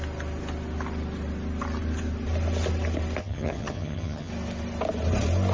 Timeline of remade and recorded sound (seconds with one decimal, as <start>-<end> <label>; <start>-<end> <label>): 0.0-3.2 recorded; 3.2-4.3 remade; 4.3-5.5 recorded